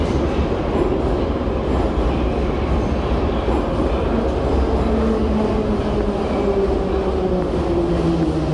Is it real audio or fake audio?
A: real